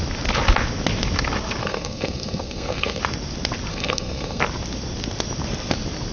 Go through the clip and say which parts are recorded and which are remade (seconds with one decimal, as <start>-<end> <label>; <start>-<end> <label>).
0.0-1.6 recorded; 1.6-3.0 remade; 3.0-3.7 recorded; 3.7-4.4 remade; 4.4-6.1 recorded